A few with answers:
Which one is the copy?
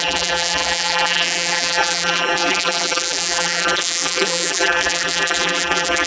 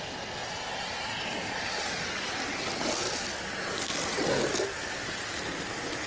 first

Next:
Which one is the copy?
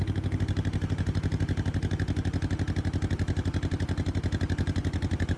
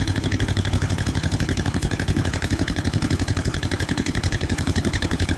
second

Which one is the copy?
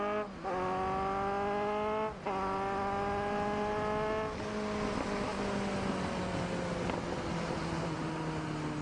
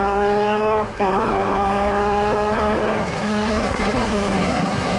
second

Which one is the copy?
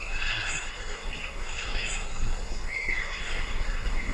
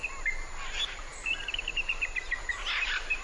first